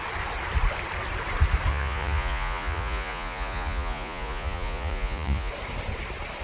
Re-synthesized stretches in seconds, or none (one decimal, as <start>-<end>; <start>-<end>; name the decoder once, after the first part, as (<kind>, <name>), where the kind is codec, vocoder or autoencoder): 1.7-5.5 (vocoder, Vocos)

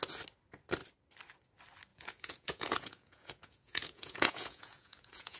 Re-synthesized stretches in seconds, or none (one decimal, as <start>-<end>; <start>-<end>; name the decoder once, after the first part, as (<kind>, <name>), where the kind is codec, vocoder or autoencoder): 1.9-5.4 (vocoder, Vocos)

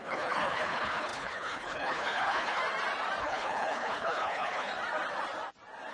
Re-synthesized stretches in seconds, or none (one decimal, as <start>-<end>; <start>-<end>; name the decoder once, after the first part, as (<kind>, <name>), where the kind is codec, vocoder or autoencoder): 0.0-2.6 (codec, HILCodec); 3.2-4.7

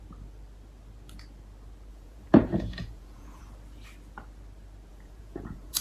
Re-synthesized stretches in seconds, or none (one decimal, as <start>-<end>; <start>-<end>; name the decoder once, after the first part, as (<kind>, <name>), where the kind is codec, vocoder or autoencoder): 1.9-3.4 (vocoder, Vocos); 4.9-5.8

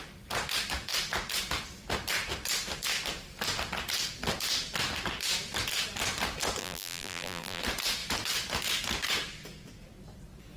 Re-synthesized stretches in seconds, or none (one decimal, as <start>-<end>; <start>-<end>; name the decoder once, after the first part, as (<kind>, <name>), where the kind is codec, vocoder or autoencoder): 6.6-7.6 (vocoder, BigVGAN v2)

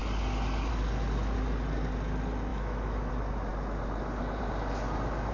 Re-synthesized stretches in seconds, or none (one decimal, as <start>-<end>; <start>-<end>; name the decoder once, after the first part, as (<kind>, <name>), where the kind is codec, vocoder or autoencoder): 2.5-3.1 (autoencoder, DAC-VAE)

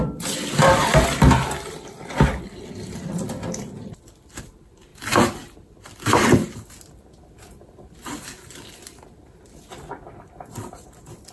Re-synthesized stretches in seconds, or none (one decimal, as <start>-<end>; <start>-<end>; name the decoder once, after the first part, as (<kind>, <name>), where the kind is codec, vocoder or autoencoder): 0.0-4.9 (vocoder, BigVGAN v2); 7.2-11.3